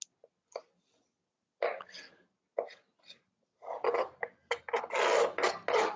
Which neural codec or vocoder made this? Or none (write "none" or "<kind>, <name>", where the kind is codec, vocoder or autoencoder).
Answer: none